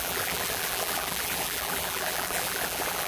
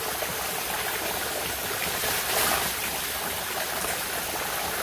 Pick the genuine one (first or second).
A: second